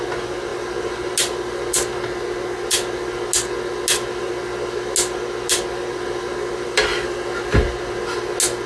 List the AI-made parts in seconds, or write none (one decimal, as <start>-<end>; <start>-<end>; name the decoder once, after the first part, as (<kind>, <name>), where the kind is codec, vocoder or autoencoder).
none